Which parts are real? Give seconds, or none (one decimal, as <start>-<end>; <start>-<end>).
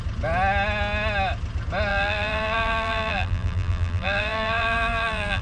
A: 0.0-1.9